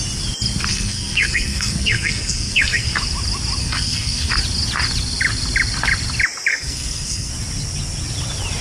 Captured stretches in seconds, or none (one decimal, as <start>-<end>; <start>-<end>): 0.0-0.7; 2.9-3.6; 4.3-6.5; 7.3-8.6